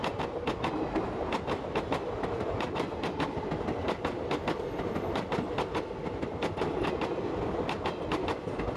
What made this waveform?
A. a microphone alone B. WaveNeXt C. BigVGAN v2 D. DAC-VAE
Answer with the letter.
A